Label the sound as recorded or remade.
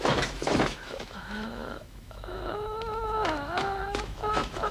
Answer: remade